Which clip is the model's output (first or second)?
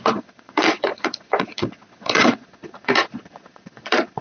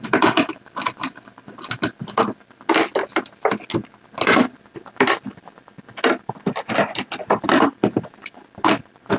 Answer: first